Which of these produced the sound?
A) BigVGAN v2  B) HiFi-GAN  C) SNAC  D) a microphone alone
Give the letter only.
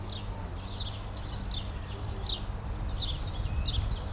D